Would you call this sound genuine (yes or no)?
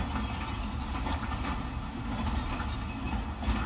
yes